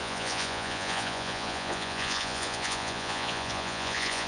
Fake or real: fake